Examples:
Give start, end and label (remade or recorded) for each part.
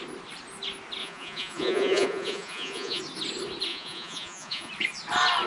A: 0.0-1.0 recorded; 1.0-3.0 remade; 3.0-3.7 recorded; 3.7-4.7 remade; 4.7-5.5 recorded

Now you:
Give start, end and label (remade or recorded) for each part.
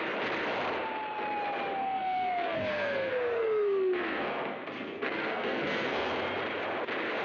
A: 0.0-1.8 recorded; 1.8-6.1 remade; 6.1-7.2 recorded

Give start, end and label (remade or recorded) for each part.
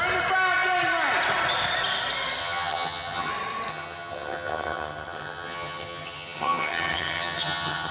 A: 0.0-2.4 recorded; 2.4-3.3 remade; 3.3-3.7 recorded; 3.7-7.9 remade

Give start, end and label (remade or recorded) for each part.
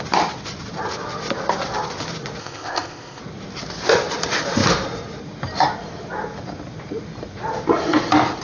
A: 0.0-2.4 recorded; 2.4-3.2 remade; 3.2-8.4 recorded